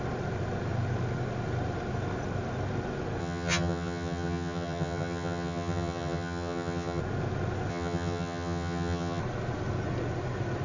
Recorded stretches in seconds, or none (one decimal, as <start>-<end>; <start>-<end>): 0.0-3.2; 7.0-7.7; 9.2-10.6